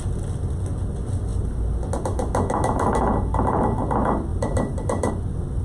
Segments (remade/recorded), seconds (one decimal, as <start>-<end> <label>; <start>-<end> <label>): 0.0-4.3 recorded; 4.3-5.1 remade; 5.1-5.6 recorded

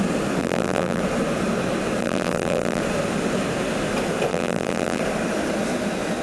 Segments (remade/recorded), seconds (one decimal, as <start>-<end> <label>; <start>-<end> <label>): 0.0-0.4 recorded; 0.4-1.0 remade; 1.0-2.0 recorded; 2.0-2.8 remade; 2.8-4.3 recorded; 4.3-5.0 remade; 5.0-6.2 recorded

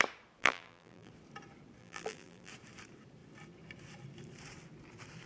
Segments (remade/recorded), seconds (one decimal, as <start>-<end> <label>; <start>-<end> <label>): 0.0-0.4 recorded; 0.4-1.1 remade; 1.1-1.8 recorded; 1.8-2.5 remade; 2.5-5.3 recorded

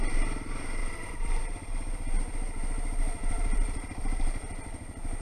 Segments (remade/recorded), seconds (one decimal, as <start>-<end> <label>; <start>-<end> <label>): 0.0-0.8 recorded; 0.8-1.4 remade; 1.4-3.2 recorded; 3.2-4.8 remade; 4.8-5.2 recorded